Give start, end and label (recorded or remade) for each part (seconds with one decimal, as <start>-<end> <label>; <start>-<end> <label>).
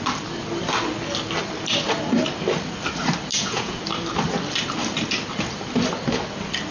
0.0-3.3 recorded; 3.3-3.8 remade; 3.8-6.7 recorded